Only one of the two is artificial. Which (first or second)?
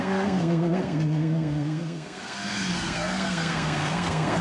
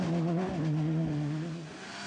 first